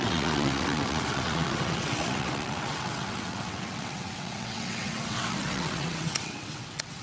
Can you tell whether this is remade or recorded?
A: remade